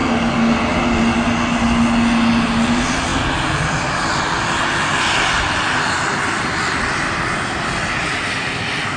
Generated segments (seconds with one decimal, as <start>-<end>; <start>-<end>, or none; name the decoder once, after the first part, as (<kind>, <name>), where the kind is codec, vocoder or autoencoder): none